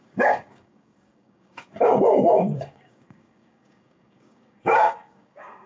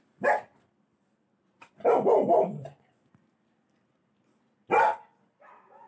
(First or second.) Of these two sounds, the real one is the second